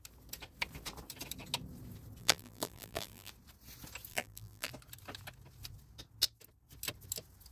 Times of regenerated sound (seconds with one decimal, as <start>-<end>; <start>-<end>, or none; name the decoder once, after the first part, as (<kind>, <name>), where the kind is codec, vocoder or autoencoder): 2.2-3.3 (vocoder, BigVGAN v2); 4.1-4.7